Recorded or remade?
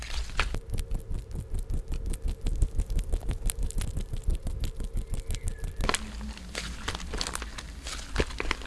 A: recorded